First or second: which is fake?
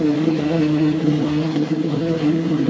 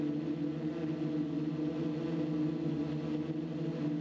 first